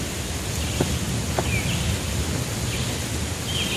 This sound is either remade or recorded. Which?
recorded